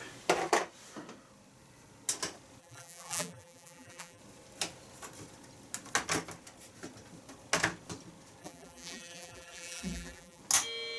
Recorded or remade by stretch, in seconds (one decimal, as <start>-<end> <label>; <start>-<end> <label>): 0.0-2.6 recorded; 2.6-4.2 remade; 4.2-8.4 recorded; 8.4-10.4 remade; 10.4-11.0 recorded